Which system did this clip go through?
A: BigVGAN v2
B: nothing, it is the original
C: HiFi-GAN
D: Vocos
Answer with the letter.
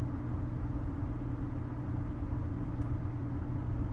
B